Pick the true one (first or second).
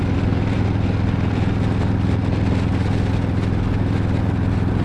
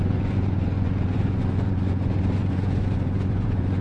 first